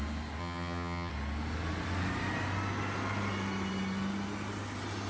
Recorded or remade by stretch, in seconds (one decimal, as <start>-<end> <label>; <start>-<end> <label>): 0.0-0.4 recorded; 0.4-1.1 remade; 1.1-5.1 recorded